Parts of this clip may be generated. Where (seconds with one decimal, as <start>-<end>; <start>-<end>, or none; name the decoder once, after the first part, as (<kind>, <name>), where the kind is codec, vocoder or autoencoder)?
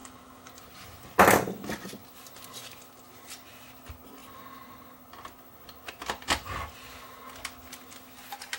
0.0-0.5 (autoencoder, DAC-VAE)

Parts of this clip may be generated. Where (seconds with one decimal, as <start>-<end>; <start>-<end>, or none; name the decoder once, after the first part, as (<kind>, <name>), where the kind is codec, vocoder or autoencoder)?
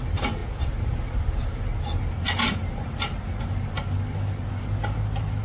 none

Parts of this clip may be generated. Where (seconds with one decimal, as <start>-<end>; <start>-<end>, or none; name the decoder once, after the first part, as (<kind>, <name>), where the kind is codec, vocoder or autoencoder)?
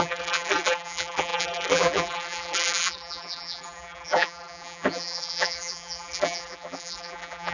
0.0-7.5 (vocoder, BigVGAN v2)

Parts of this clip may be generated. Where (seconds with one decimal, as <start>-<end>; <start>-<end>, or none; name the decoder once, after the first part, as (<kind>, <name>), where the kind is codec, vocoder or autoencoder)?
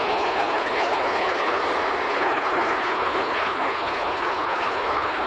0.0-1.6 (codec, HILCodec); 2.1-5.3